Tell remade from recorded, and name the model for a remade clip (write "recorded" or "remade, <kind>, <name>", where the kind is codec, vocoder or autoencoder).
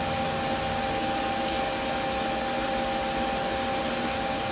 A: recorded